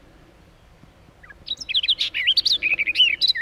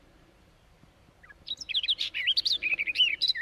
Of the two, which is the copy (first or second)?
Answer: second